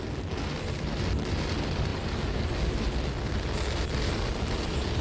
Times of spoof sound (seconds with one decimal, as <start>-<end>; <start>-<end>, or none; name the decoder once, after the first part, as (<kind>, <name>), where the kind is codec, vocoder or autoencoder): none